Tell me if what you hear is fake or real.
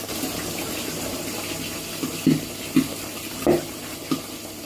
real